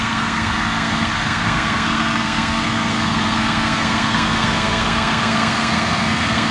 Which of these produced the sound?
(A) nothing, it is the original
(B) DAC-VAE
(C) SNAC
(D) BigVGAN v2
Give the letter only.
C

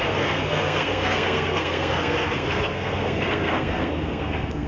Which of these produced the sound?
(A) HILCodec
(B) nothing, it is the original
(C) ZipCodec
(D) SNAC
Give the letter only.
D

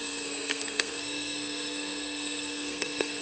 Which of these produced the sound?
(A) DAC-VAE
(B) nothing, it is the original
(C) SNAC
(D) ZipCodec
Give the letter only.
C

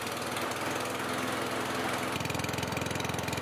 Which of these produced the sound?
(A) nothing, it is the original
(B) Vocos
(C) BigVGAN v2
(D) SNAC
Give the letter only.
A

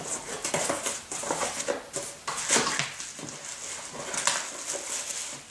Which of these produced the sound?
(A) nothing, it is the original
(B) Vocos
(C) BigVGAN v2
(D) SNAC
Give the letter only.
A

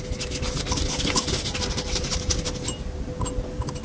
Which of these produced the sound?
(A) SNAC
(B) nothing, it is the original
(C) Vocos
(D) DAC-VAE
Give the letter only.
B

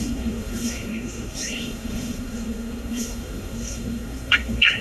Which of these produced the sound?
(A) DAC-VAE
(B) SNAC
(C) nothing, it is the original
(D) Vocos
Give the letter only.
B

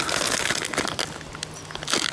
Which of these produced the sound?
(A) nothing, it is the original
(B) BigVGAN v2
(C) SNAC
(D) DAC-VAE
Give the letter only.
A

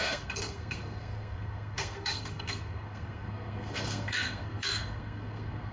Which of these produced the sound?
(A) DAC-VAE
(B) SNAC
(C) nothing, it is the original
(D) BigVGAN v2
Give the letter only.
B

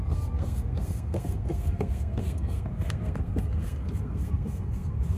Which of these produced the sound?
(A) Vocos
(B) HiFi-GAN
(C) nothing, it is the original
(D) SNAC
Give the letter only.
D